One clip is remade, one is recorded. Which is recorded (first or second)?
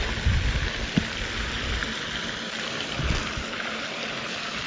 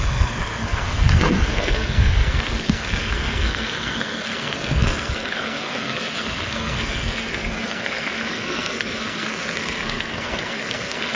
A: first